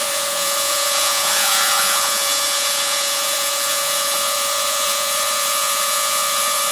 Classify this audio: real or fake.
fake